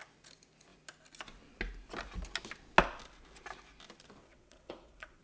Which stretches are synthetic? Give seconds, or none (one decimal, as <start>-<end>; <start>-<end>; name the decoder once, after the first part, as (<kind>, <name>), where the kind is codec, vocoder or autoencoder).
4.2-5.2 (vocoder, WaveNeXt)